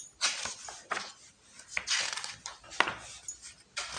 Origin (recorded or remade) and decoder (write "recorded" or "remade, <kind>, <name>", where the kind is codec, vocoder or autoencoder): recorded